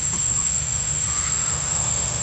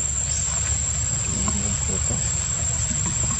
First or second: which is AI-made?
first